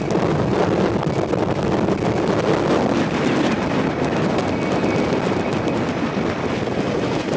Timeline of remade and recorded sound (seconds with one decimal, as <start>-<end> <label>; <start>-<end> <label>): 0.0-7.4 recorded